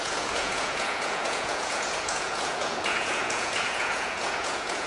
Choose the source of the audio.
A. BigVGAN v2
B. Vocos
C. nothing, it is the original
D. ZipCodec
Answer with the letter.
B